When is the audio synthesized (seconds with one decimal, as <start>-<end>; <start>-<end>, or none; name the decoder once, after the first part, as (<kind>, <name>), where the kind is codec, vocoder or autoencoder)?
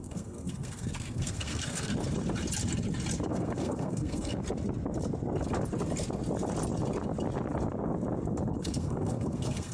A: 0.0-1.9 (codec, SNAC); 3.3-4.4; 8.6-9.7